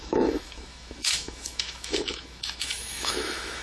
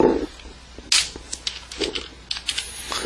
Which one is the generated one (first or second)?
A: first